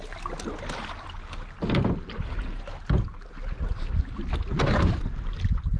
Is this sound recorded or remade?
recorded